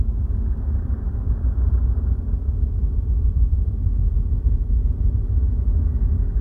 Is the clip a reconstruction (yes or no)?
no